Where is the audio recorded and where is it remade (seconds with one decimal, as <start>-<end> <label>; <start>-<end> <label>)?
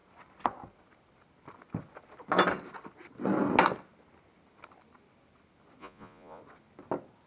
0.0-5.8 recorded; 5.8-6.4 remade; 6.4-7.3 recorded